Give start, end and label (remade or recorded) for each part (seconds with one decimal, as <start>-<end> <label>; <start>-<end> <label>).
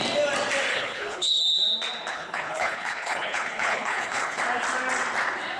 0.0-0.7 recorded; 0.7-1.4 remade; 1.4-2.1 recorded; 2.1-4.4 remade; 4.4-5.6 recorded